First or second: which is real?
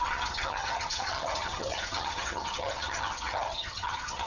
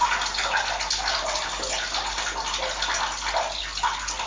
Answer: second